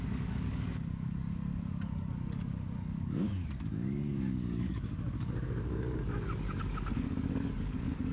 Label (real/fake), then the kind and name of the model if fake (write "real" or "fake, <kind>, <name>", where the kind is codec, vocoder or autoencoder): fake, codec, DAC